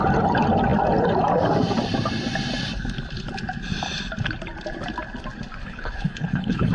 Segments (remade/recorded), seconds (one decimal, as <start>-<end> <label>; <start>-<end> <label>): 0.0-5.6 recorded; 5.6-6.7 remade